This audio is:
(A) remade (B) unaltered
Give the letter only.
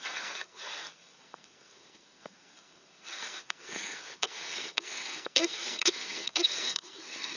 A